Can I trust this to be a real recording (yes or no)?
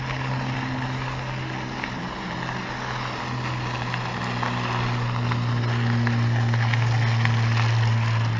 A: yes